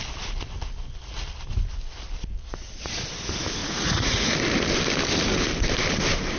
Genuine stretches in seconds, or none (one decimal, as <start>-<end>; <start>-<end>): 0.0-3.6; 4.3-6.4